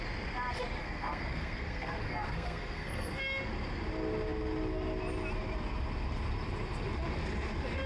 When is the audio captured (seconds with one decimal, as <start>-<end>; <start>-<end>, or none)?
0.0-0.8; 3.2-7.9